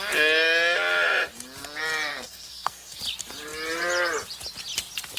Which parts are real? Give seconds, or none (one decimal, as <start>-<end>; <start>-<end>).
0.0-2.1; 3.0-5.2